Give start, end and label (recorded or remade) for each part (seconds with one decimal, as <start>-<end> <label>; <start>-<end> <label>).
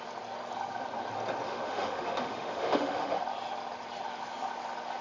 0.0-1.5 recorded; 1.5-3.2 remade; 3.2-5.0 recorded